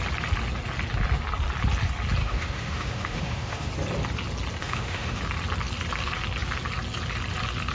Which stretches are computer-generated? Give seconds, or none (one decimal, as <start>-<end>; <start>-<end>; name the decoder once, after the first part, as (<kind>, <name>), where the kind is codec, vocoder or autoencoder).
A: 2.2-3.7 (autoencoder, DAC-VAE); 4.6-5.2